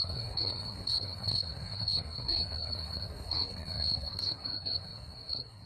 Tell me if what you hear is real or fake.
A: fake